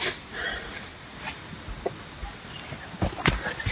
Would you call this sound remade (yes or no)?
no